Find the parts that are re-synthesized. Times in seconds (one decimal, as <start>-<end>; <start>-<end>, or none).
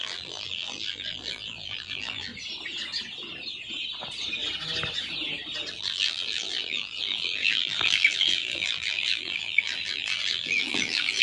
0.0-2.3; 5.7-11.2